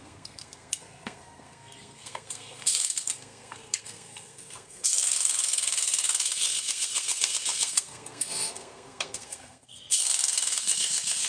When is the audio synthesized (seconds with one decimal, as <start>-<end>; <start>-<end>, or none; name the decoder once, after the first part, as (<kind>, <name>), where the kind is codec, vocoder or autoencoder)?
0.0-11.3 (codec, SNAC)